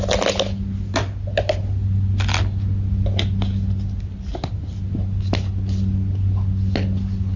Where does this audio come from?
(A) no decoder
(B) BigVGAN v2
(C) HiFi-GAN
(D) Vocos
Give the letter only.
A